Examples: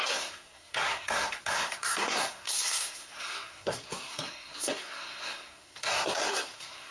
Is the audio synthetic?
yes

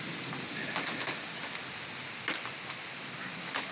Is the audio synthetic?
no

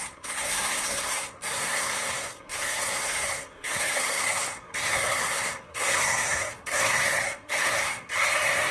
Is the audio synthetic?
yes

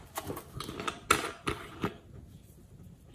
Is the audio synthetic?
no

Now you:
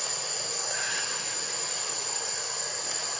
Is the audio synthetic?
no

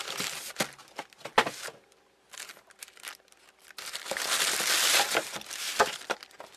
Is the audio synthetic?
no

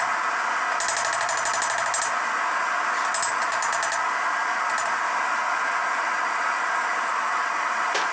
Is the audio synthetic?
no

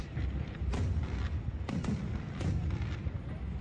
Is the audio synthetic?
no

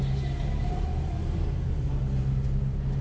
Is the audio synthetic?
no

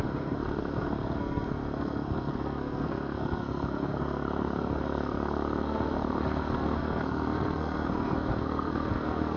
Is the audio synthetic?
yes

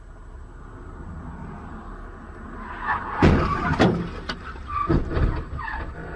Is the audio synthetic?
no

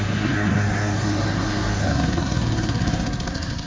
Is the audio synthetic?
yes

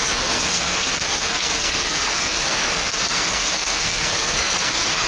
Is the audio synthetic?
yes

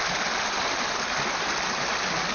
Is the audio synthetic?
no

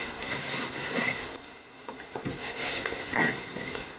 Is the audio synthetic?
yes